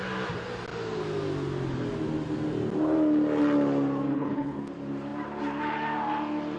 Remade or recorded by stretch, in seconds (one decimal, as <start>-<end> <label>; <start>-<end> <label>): 0.0-4.1 recorded; 4.1-4.6 remade; 4.6-6.6 recorded